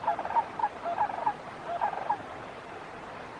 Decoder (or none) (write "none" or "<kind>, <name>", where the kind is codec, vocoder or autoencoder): none